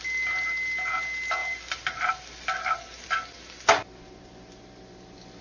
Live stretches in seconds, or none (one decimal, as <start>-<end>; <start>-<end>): 0.0-1.4; 4.6-5.4